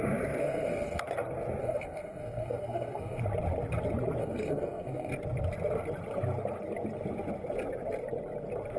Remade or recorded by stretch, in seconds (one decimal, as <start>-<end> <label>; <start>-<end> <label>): 0.0-0.4 recorded; 0.4-1.0 remade; 1.0-1.6 recorded; 1.6-3.2 remade; 3.2-4.2 recorded; 4.2-5.1 remade; 5.1-8.8 recorded